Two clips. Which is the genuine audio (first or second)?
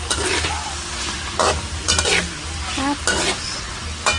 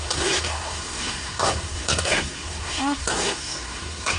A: first